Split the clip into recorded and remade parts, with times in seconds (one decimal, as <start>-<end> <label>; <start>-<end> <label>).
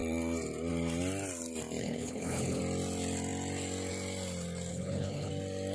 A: 0.0-1.8 recorded; 1.8-2.6 remade; 2.6-4.7 recorded; 4.7-5.3 remade; 5.3-5.7 recorded